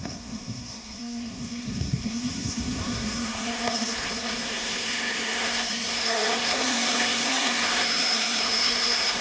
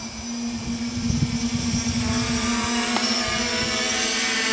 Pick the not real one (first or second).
first